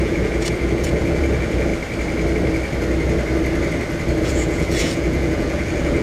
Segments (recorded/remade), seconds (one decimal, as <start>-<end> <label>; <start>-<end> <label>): 0.0-1.7 remade; 1.7-4.2 recorded; 4.2-6.0 remade